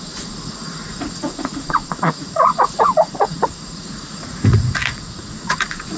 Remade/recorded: remade